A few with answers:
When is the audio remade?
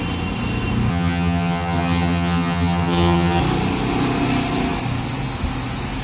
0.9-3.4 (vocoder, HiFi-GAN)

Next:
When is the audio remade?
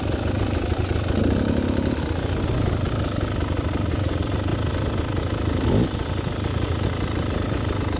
none